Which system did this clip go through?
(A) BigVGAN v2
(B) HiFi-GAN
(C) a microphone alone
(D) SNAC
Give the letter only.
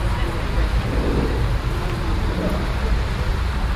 C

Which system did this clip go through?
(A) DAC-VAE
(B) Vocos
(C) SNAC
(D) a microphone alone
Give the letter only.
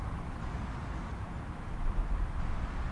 D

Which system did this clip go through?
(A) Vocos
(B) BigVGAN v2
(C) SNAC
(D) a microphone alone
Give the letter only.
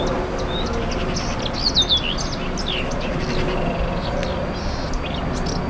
D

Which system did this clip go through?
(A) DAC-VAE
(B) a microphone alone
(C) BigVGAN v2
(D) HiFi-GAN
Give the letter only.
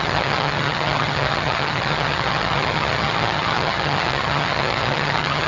D